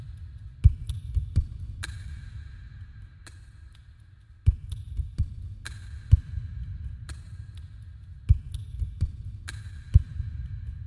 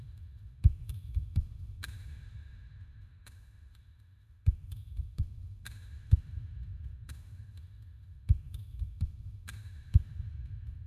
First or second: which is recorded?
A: first